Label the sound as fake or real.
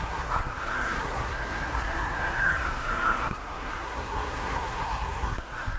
fake